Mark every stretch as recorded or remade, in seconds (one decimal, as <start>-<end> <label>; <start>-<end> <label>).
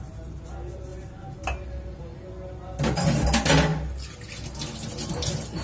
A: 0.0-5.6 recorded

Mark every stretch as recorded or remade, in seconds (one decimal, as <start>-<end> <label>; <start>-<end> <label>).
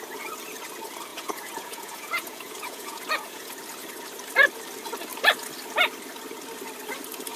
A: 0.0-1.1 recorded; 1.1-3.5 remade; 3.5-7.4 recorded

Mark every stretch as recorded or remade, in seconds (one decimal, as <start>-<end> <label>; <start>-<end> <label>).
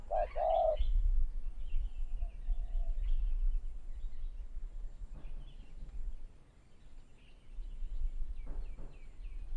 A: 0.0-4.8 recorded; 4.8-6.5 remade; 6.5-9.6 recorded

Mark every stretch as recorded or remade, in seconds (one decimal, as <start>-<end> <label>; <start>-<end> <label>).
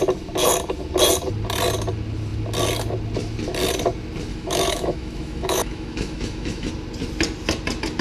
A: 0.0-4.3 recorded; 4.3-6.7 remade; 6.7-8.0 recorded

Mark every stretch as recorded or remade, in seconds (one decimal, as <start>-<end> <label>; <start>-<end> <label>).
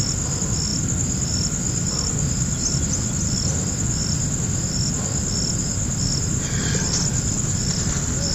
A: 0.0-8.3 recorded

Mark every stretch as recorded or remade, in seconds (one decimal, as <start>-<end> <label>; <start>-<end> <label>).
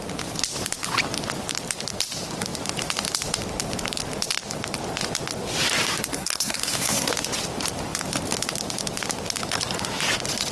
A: 0.0-6.1 recorded; 6.1-7.1 remade; 7.1-10.5 recorded